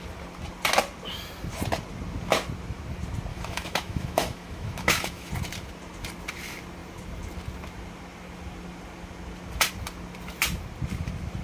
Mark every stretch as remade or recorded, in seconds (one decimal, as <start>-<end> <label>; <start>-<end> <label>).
0.0-3.3 recorded; 3.3-5.3 remade; 5.3-11.4 recorded